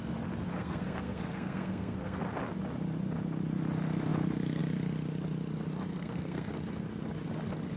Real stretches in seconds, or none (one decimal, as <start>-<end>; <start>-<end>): 0.0-0.5; 2.2-5.9; 6.5-7.8